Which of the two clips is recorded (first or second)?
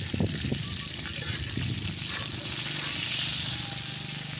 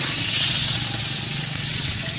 first